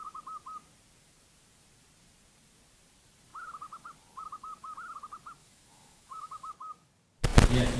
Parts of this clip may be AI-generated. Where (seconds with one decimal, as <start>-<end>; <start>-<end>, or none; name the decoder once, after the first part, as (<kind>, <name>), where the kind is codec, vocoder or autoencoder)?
5.4-6.5 (autoencoder, DAC-VAE)